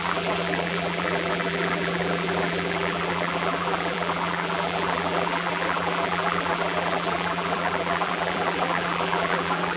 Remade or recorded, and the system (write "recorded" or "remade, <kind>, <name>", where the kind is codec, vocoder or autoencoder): remade, vocoder, BigVGAN v2